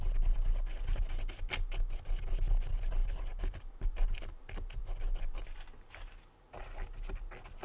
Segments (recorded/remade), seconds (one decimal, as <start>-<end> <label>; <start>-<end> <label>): 0.0-3.0 recorded; 3.0-3.6 remade; 3.6-7.6 recorded